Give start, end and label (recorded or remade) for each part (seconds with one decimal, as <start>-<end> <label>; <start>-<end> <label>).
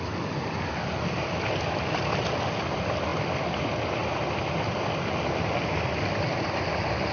0.0-7.1 recorded